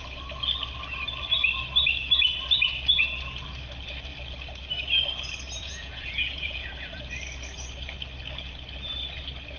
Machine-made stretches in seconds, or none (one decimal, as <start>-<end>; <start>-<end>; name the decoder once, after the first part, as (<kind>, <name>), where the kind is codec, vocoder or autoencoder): 5.6-7.0 (vocoder, Vocos)